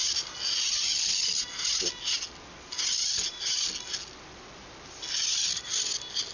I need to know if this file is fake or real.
real